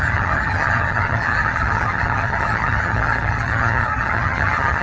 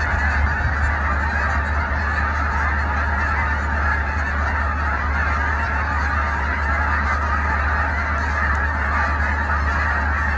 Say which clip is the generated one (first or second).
first